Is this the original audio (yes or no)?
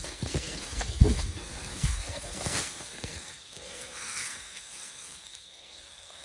no